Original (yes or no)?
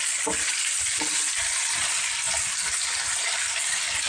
yes